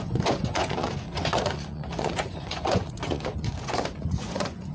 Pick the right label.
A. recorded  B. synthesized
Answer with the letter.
B